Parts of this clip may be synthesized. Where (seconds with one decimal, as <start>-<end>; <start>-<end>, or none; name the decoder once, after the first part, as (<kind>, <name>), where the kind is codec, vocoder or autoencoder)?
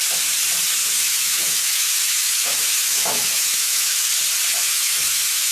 0.8-4.1 (autoencoder, DAC-VAE); 4.6-5.5